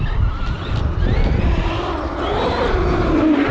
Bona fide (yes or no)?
yes